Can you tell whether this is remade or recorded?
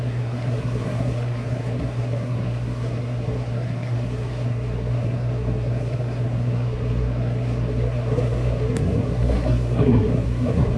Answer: remade